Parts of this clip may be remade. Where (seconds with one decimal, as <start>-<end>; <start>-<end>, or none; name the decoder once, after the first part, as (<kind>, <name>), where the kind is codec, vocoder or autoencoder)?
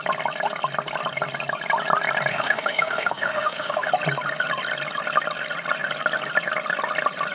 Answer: 2.3-3.9 (autoencoder, DAC-VAE)